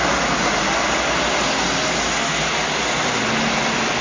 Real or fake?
real